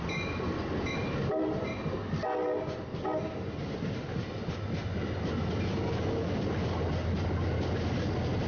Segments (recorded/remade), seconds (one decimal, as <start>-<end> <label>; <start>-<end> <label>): 0.0-8.5 recorded